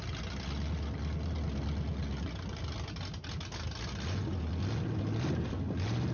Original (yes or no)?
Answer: yes